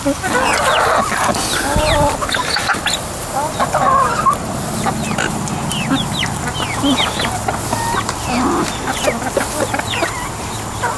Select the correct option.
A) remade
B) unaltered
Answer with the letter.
B